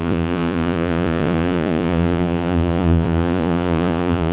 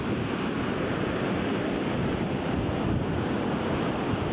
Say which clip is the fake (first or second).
first